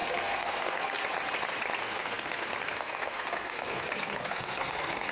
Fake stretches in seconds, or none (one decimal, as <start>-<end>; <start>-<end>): 0.0-1.0; 1.8-5.1